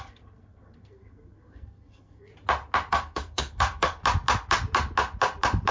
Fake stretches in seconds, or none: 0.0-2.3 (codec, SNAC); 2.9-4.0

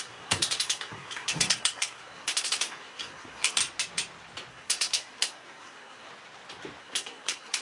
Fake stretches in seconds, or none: 0.0-3.6 (codec, SNAC); 4.5-6.1; 6.8-7.6

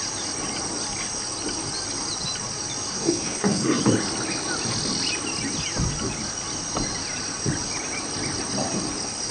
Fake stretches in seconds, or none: 2.9-3.8 (codec, SNAC)

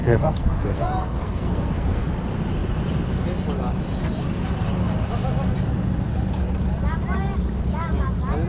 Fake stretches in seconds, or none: 0.0-2.1 (codec, SNAC)

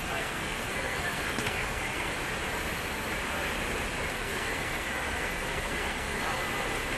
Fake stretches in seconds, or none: 0.0-2.1 (codec, SNAC); 4.1-6.2

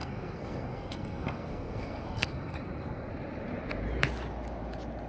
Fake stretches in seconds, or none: 0.0-3.1 (codec, SNAC)

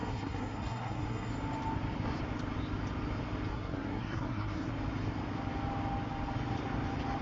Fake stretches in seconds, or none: 0.0-1.3 (codec, SNAC); 3.5-4.7